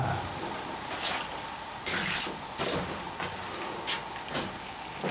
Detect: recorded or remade recorded